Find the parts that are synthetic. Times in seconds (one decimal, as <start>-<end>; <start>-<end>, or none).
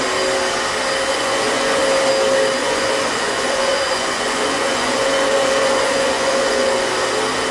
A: 1.1-1.8; 2.6-6.9